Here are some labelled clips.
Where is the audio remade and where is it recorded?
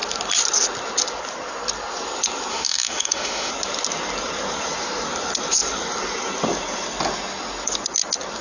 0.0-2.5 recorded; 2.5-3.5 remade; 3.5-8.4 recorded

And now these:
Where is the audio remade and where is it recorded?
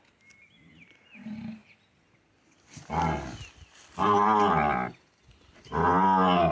0.0-6.5 recorded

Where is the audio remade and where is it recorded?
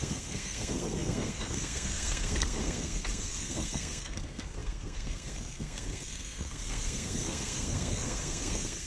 0.0-8.9 remade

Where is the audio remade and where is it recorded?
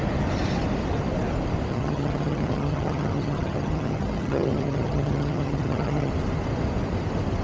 0.0-1.7 recorded; 1.7-6.1 remade; 6.1-7.4 recorded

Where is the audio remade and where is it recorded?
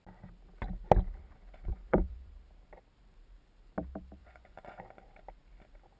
0.0-1.7 recorded; 1.7-2.3 remade; 2.3-4.2 recorded; 4.2-4.8 remade; 4.8-6.0 recorded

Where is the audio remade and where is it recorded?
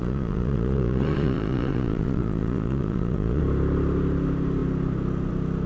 0.0-3.4 remade; 3.4-5.7 recorded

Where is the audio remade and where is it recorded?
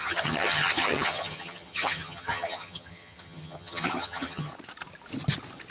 0.0-4.5 remade; 4.5-5.7 recorded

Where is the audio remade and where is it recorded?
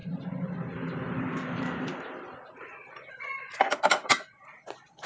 0.0-5.1 recorded